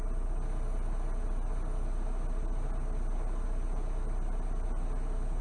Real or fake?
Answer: real